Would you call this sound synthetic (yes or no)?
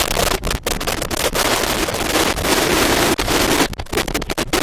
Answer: no